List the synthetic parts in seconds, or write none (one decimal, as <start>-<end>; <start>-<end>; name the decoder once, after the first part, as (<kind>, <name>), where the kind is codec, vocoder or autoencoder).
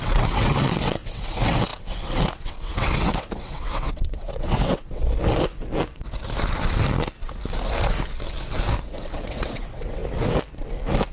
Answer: 0.0-5.0 (vocoder, WaveNeXt); 8.9-10.0